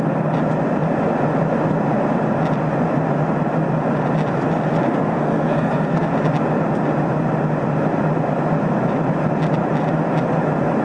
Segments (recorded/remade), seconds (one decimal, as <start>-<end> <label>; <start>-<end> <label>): 0.0-4.9 recorded; 4.9-6.0 remade; 6.0-10.8 recorded